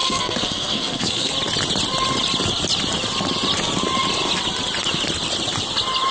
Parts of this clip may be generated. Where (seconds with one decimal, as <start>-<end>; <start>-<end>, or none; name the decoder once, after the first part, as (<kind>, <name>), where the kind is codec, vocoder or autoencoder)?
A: 0.0-1.3 (codec, SNAC)